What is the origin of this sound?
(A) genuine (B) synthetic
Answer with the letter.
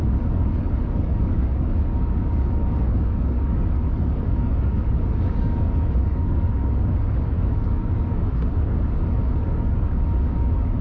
B